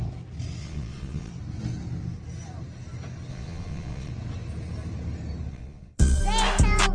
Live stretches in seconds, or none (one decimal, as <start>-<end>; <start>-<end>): 0.0-0.6; 1.3-3.3; 4.1-5.5; 6.2-6.9